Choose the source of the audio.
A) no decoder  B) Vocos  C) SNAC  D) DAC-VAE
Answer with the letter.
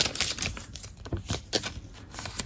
A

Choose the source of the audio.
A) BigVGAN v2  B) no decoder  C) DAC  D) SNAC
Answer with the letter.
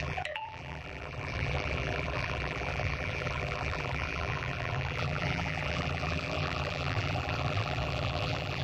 A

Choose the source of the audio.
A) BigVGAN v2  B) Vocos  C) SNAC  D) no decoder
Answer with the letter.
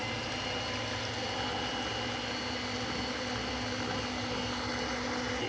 D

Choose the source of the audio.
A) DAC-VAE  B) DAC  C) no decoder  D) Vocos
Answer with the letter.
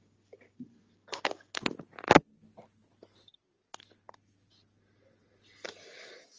C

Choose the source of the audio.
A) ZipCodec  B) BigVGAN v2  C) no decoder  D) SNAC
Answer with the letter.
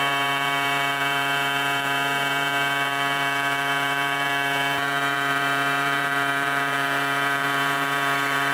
B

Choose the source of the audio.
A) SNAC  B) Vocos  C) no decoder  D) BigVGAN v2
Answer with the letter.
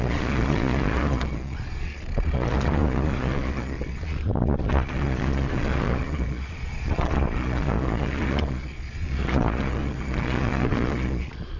B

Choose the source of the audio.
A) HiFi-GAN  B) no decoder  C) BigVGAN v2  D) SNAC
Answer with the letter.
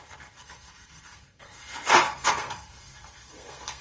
D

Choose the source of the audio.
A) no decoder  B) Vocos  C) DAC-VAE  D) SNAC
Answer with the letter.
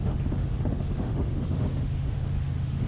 C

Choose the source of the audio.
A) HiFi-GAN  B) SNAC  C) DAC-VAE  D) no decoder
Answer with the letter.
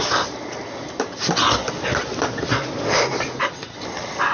D